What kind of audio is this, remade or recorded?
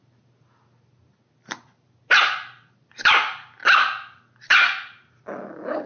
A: recorded